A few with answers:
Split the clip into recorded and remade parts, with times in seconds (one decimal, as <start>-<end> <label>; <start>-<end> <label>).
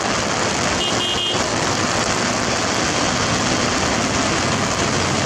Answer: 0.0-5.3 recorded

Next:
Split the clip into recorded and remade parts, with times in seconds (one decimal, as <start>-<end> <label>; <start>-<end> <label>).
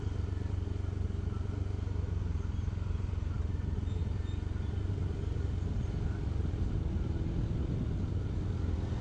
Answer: 0.0-9.0 recorded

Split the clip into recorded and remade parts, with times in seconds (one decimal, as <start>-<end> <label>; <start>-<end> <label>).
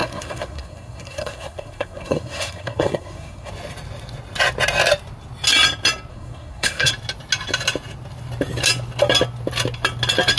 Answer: 0.0-3.5 remade; 3.5-6.1 recorded; 6.1-6.9 remade; 6.9-10.4 recorded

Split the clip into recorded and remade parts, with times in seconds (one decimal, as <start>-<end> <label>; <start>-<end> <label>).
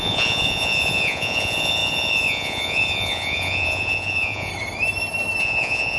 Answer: 0.0-4.5 remade; 4.5-5.4 recorded; 5.4-6.0 remade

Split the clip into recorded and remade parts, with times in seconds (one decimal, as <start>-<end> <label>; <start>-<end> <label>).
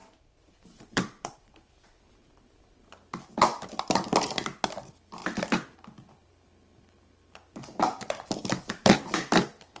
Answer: 0.0-2.9 remade; 2.9-8.4 recorded; 8.4-8.9 remade; 8.9-9.8 recorded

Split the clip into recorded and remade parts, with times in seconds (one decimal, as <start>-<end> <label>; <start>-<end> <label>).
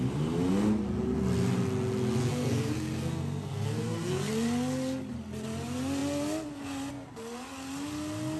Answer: 0.0-2.3 recorded; 2.3-4.3 remade; 4.3-8.4 recorded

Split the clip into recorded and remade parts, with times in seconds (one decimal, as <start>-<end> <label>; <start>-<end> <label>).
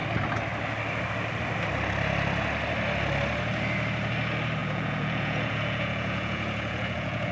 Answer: 0.0-4.6 recorded; 4.6-7.3 remade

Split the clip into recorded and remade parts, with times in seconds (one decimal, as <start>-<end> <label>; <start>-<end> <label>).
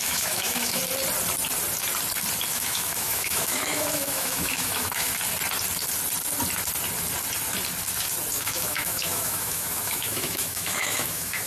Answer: 0.0-0.8 remade; 0.8-2.5 recorded; 2.5-5.1 remade; 5.1-8.3 recorded; 8.3-11.5 remade